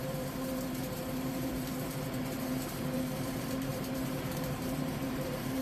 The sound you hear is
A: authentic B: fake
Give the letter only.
B